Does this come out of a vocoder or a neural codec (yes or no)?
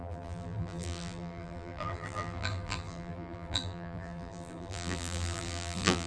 yes